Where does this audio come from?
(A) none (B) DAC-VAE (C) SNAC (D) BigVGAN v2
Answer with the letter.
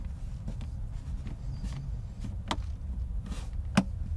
A